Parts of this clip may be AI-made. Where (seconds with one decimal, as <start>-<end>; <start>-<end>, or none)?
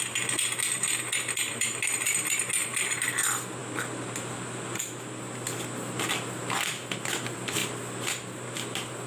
2.7-3.2; 3.6-4.9